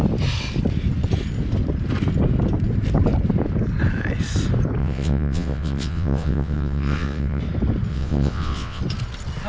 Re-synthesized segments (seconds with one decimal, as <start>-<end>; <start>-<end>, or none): 4.8-7.4; 7.9-8.8